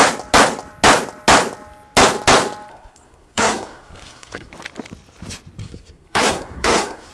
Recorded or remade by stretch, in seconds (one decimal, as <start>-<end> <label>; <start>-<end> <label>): 0.0-2.7 recorded; 2.7-4.5 remade; 4.5-5.6 recorded; 5.6-7.1 remade